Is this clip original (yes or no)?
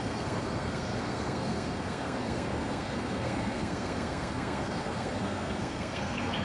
no